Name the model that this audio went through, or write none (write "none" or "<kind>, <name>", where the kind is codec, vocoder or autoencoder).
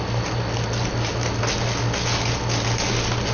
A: none